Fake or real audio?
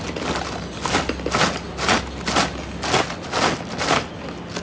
real